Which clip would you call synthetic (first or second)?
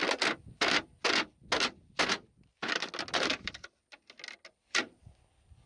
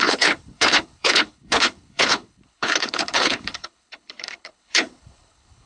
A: second